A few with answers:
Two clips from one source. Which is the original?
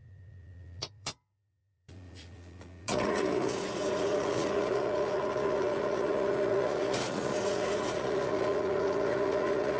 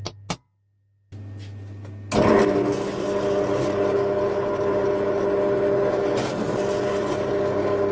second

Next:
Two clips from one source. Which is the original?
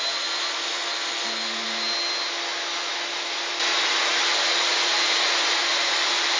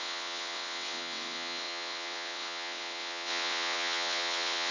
first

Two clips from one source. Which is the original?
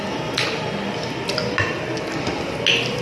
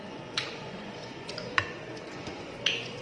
first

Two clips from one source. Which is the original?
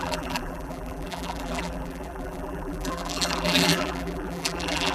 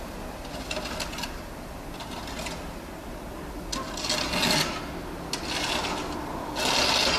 second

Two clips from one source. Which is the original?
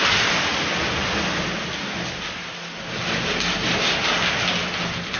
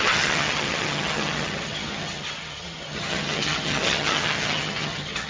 first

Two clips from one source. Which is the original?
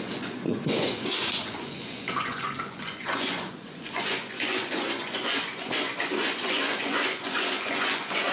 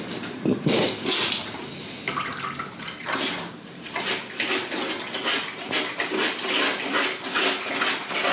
second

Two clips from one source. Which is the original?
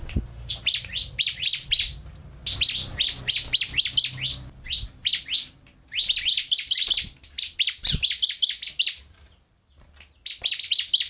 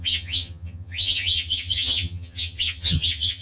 first